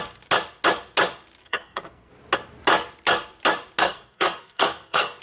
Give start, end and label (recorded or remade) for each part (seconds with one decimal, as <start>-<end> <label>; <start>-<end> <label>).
0.0-1.4 recorded; 1.4-2.1 remade; 2.1-3.8 recorded; 3.8-5.2 remade